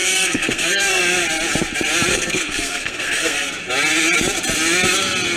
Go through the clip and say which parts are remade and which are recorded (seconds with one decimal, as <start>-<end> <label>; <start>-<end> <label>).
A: 0.0-1.0 remade; 1.0-2.1 recorded; 2.1-3.5 remade; 3.5-5.4 recorded